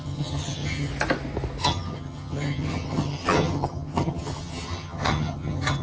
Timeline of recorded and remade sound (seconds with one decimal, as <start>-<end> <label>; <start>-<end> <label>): 0.0-0.9 remade; 0.9-1.6 recorded; 1.6-5.8 remade